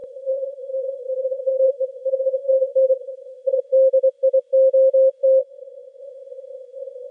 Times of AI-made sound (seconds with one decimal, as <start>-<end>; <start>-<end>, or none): 0.0-3.5